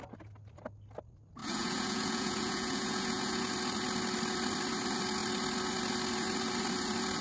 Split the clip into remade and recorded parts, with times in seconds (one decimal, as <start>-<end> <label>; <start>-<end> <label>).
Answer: 0.0-1.4 recorded; 1.4-3.5 remade; 3.5-7.2 recorded